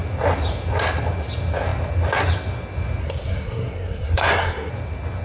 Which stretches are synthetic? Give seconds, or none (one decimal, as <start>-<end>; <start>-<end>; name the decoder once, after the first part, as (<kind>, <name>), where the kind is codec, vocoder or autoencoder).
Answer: 3.0-4.7 (codec, SNAC)